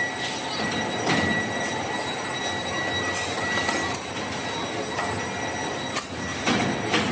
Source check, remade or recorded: recorded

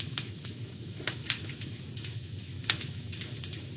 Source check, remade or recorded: remade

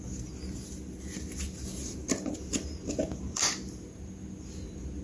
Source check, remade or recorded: recorded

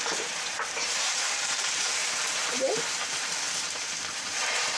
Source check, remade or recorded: remade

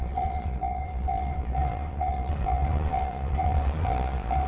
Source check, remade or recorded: remade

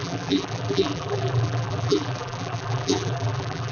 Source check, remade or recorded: remade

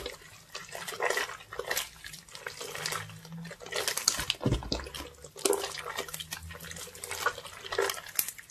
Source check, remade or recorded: recorded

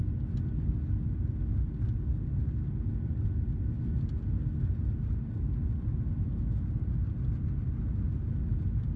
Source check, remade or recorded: recorded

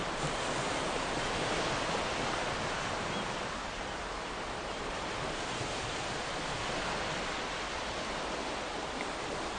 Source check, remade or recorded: recorded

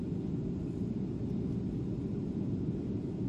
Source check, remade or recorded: recorded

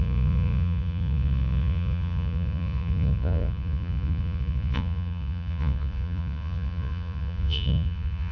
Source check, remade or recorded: remade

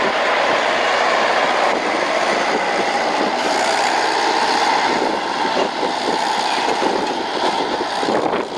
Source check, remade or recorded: remade